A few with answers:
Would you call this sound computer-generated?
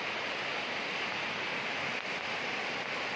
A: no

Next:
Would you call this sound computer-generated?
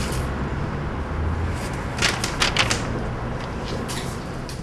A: no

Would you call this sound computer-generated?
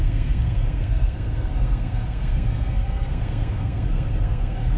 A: yes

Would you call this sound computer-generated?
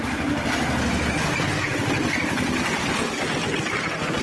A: no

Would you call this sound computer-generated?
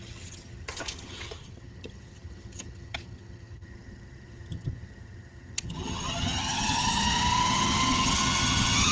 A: yes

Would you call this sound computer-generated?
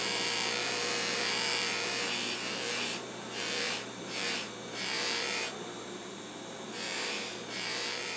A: yes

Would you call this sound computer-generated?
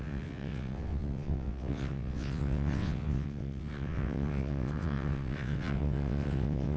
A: yes